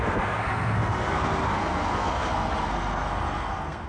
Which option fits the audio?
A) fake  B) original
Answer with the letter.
A